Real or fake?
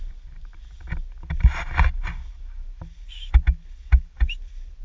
real